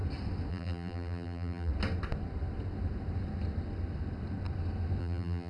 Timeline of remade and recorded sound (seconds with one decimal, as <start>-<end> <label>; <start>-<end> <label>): 0.0-0.5 recorded; 0.5-1.7 remade; 1.7-5.0 recorded; 5.0-5.5 remade